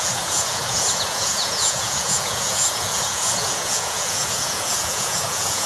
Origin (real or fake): fake